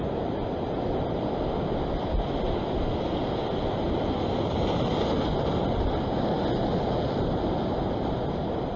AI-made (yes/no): no